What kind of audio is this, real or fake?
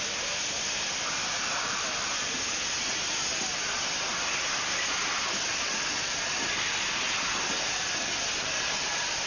real